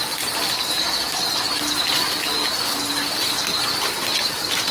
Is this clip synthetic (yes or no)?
no